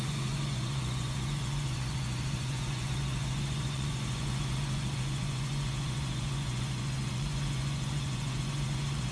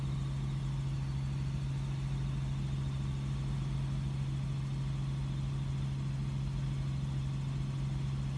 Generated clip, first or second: first